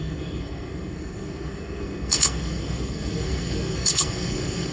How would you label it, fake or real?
fake